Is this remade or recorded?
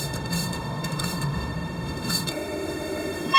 remade